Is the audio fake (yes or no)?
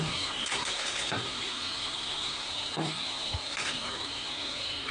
yes